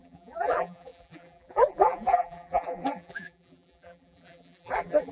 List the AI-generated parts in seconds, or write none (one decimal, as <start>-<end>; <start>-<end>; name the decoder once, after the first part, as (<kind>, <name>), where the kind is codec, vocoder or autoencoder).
0.0-5.1 (vocoder, BigVGAN v2)